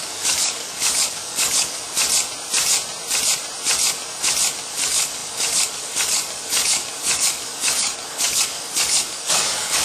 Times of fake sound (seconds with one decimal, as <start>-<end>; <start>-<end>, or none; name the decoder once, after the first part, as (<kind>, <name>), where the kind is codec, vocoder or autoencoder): 0.0-1.8 (codec, DAC); 4.7-9.8